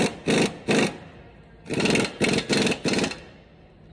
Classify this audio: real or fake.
real